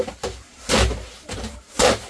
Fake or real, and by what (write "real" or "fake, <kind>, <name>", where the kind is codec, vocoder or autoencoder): fake, vocoder, BigVGAN v2